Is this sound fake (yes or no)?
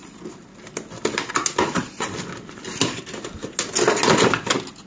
no